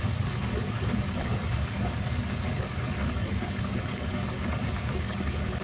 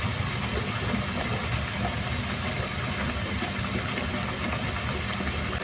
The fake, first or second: first